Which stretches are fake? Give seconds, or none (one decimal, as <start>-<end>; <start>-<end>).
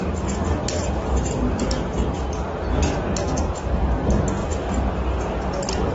none